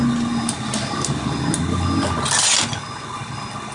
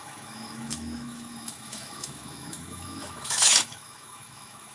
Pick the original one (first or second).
first